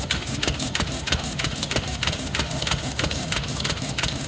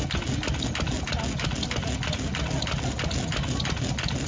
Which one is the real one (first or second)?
second